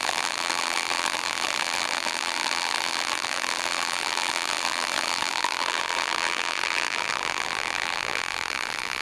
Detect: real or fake fake